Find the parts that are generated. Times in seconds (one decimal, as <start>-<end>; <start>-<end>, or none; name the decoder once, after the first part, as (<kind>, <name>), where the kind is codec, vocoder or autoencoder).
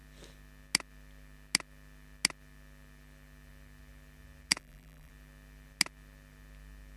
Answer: 4.5-5.1 (vocoder, BigVGAN v2)